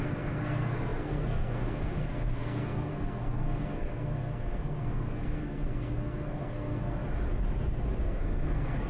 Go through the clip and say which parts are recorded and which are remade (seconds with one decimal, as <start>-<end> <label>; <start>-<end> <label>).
0.0-7.0 remade; 7.0-8.0 recorded; 8.0-8.9 remade